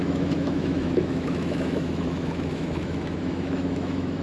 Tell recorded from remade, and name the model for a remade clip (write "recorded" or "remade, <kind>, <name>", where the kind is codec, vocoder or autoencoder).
remade, autoencoder, DAC-VAE